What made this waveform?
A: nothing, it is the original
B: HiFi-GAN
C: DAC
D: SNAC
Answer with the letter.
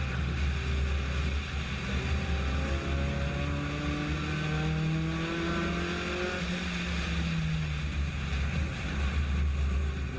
A